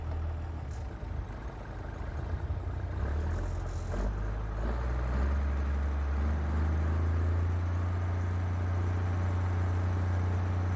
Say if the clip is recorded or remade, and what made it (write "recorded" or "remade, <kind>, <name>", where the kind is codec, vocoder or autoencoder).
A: recorded